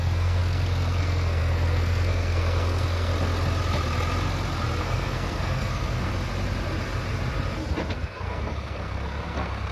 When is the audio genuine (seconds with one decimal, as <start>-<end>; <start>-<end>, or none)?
3.1-4.8; 6.1-7.9